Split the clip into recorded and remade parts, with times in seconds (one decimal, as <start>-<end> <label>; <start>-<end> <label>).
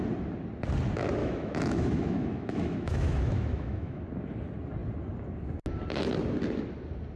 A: 0.0-1.2 recorded; 1.2-4.0 remade; 4.0-7.2 recorded